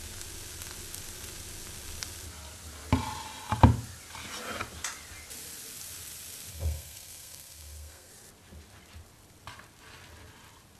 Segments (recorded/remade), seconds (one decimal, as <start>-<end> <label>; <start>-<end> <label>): 0.0-6.5 recorded; 6.5-8.1 remade; 8.1-10.8 recorded